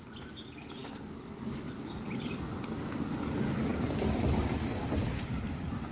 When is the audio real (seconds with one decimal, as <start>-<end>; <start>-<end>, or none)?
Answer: 3.7-5.0